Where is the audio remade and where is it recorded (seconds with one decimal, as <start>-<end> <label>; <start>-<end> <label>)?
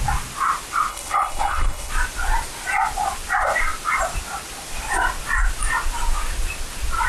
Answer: 0.0-0.9 recorded; 0.9-1.9 remade; 1.9-7.1 recorded